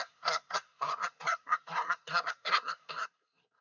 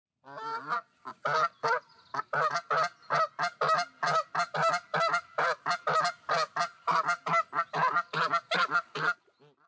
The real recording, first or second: second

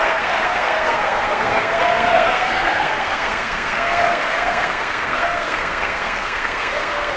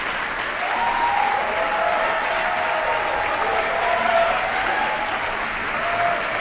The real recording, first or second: second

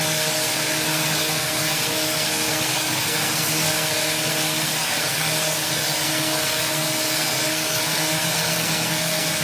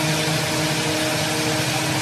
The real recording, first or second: second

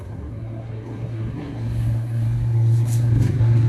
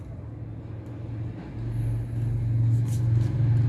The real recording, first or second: second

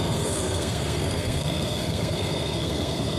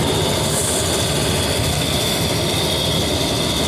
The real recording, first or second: second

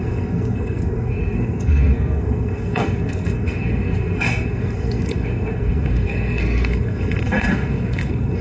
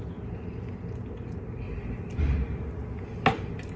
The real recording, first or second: second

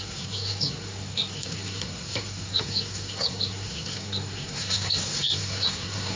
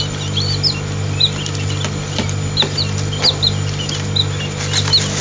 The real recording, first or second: second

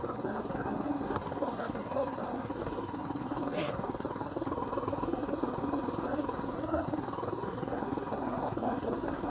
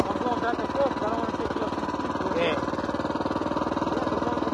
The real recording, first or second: second